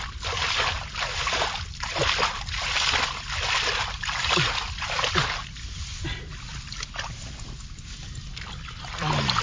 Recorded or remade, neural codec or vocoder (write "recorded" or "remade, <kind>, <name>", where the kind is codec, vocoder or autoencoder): recorded